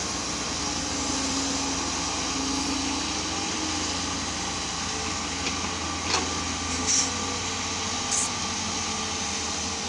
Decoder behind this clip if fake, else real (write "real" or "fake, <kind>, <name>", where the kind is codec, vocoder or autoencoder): real